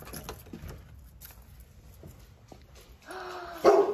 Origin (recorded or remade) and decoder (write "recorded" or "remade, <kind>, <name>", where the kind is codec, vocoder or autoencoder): recorded